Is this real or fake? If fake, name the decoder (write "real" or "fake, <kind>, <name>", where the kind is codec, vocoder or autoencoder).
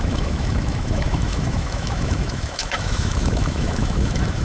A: fake, autoencoder, DAC-VAE